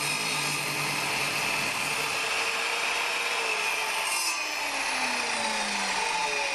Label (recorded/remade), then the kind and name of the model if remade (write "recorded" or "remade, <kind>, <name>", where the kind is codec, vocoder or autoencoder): recorded